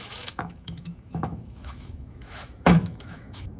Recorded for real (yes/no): no